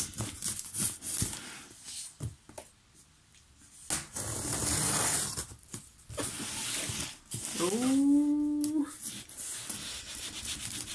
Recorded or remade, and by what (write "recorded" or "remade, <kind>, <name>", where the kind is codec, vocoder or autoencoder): recorded